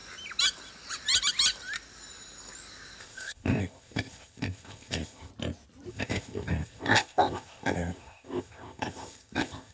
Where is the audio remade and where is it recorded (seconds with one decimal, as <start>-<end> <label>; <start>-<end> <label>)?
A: 0.0-3.0 recorded; 3.0-5.3 remade; 5.3-5.9 recorded; 5.9-9.7 remade